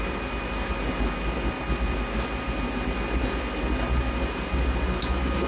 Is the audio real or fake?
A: real